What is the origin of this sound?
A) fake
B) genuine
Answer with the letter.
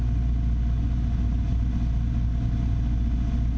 B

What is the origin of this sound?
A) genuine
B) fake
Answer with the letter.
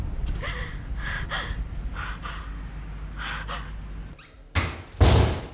A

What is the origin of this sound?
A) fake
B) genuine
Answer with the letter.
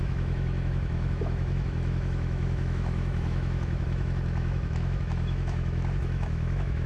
A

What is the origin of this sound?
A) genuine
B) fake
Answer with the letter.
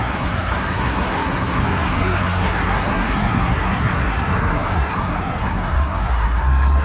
B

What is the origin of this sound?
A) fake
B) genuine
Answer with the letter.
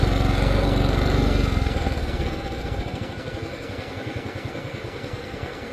A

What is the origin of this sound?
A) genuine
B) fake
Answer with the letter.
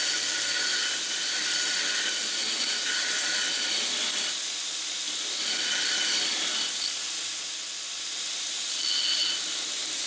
A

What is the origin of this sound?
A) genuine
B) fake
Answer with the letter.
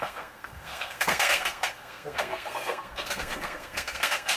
B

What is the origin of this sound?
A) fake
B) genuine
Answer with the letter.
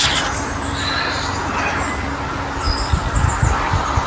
B